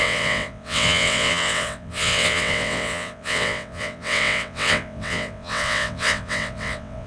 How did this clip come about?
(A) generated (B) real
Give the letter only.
A